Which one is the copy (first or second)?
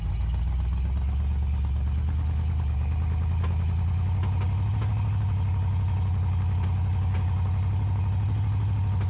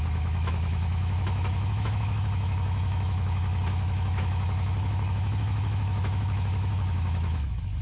second